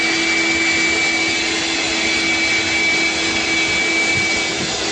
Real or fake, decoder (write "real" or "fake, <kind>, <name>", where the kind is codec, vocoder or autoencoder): real